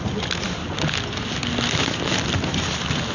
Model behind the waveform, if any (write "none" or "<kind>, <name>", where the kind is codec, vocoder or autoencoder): none